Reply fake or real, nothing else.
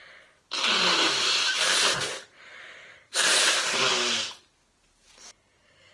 real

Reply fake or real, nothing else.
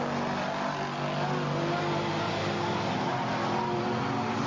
real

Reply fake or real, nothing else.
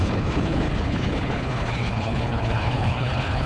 fake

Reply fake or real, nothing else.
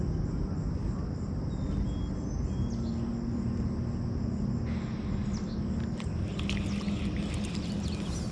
real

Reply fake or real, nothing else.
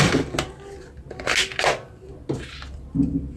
real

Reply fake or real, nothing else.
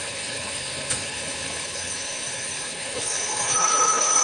fake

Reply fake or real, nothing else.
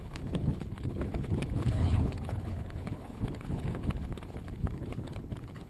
fake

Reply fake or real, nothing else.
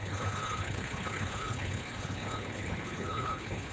fake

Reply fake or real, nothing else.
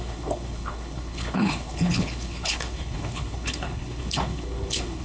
fake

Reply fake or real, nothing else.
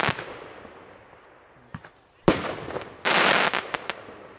real